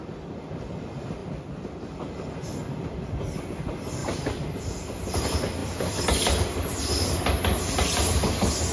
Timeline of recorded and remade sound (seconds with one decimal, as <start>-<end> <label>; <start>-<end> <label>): 0.0-1.2 recorded; 1.2-3.4 remade; 3.4-4.0 recorded; 4.0-4.6 remade; 4.6-5.6 recorded; 5.6-7.2 remade; 7.2-8.7 recorded